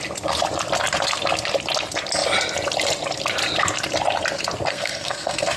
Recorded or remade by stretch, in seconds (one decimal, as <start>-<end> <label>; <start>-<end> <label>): 0.0-4.7 recorded; 4.7-5.6 remade